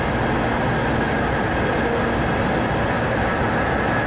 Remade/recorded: recorded